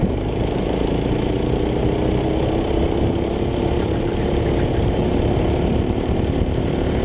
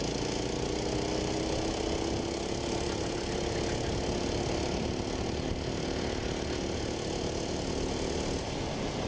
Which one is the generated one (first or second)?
first